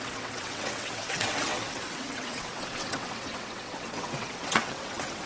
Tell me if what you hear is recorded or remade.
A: remade